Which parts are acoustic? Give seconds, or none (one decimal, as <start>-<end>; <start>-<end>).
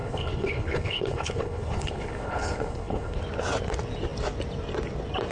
3.2-5.3